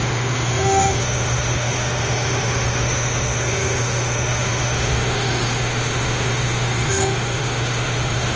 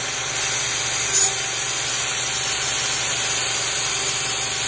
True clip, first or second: second